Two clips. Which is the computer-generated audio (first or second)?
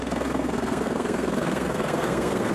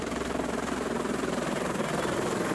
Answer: first